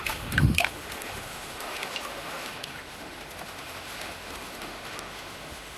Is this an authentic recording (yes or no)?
no